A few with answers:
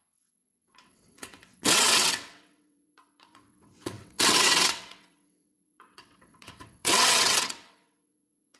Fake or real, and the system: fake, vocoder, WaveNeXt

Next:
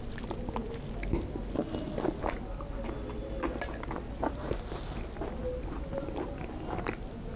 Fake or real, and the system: real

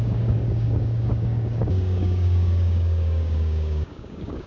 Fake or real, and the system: fake, codec, DAC